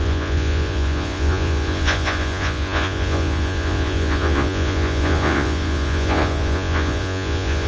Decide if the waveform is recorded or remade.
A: remade